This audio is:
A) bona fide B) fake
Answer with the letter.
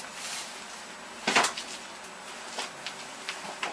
A